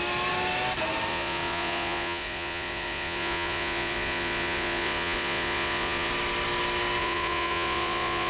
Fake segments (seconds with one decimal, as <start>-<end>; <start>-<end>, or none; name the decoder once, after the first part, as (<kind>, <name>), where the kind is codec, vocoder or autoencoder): 1.1-6.1 (vocoder, Vocos); 7.0-8.3